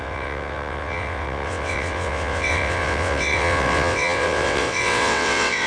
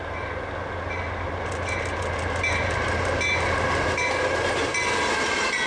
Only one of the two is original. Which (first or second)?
second